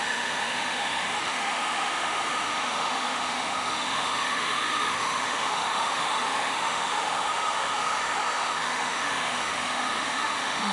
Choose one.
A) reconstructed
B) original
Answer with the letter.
A